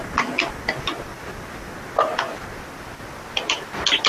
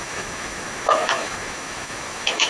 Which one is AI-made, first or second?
second